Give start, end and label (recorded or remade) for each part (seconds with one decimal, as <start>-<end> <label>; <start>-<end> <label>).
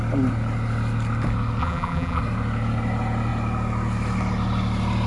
0.0-1.6 recorded; 1.6-2.2 remade; 2.2-5.1 recorded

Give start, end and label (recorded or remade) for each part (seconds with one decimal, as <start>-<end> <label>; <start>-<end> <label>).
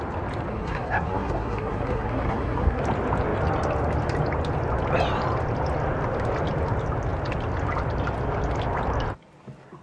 0.0-0.5 recorded; 0.5-2.8 remade; 2.8-9.8 recorded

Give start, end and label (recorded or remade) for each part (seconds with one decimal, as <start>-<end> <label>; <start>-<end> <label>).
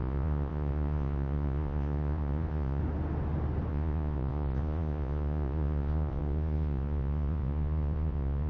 0.0-2.8 remade; 2.8-3.7 recorded; 3.7-8.5 remade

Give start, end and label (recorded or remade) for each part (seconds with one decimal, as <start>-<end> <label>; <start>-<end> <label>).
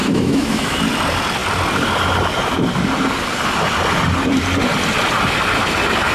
0.0-0.8 remade; 0.8-6.1 recorded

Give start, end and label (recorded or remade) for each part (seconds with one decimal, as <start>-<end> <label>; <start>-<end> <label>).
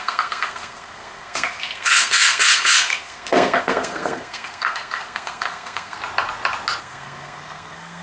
0.0-6.0 remade; 6.0-6.8 recorded; 6.8-8.0 remade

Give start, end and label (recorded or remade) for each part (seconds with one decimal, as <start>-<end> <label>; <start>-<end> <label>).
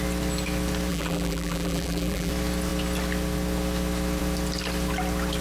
0.0-0.9 recorded; 0.9-2.3 remade; 2.3-5.4 recorded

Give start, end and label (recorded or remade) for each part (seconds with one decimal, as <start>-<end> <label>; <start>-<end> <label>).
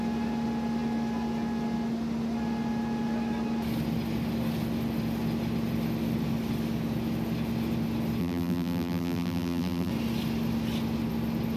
0.0-8.2 recorded; 8.2-9.9 remade; 9.9-11.6 recorded